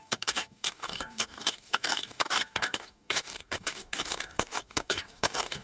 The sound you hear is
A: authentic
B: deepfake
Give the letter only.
B